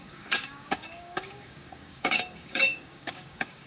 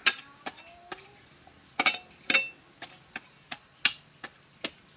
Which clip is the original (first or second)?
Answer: second